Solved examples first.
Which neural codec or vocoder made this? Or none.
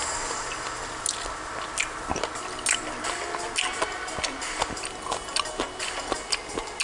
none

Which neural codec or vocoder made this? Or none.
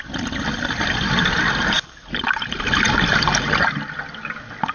none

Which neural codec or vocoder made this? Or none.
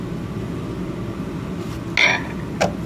none